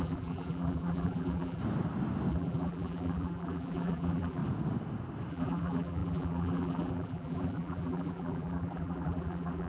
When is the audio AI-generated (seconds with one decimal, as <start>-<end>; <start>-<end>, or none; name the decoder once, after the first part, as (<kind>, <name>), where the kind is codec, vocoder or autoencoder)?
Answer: 0.0-1.6 (vocoder, BigVGAN v2); 2.3-4.4; 5.3-9.7